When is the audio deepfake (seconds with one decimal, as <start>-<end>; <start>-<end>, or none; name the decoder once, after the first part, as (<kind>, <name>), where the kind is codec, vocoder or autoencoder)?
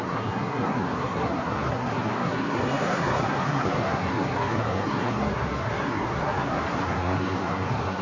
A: 0.0-8.0 (codec, SNAC)